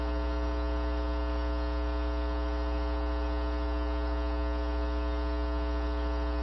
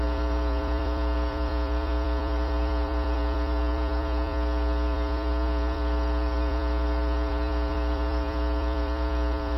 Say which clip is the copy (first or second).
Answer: second